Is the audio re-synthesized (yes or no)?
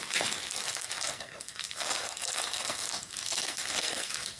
yes